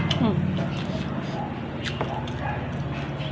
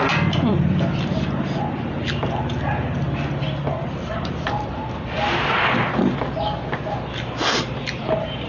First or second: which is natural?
first